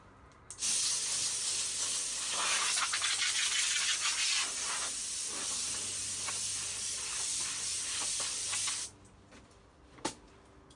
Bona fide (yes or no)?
yes